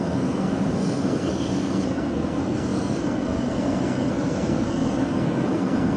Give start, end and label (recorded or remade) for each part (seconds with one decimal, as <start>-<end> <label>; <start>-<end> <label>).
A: 0.0-6.0 remade